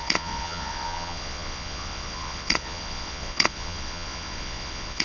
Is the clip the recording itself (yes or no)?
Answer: no